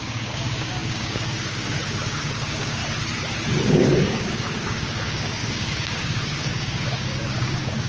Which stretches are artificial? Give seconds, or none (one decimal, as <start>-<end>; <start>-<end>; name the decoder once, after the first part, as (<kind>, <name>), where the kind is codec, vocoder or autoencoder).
0.0-2.8 (codec, DAC); 3.7-7.9